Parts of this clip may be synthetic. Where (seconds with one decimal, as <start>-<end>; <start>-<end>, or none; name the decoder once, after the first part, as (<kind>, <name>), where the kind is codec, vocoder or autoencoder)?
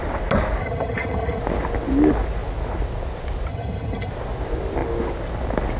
0.6-1.4 (vocoder, HiFi-GAN); 3.5-4.1